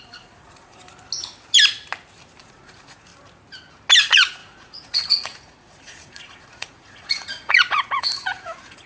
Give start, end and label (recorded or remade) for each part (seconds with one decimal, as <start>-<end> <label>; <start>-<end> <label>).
0.0-0.8 remade; 0.8-2.4 recorded; 2.4-3.1 remade; 3.1-4.0 recorded; 4.0-8.9 remade